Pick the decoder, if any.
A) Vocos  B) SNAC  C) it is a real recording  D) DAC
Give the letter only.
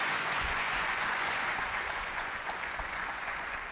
A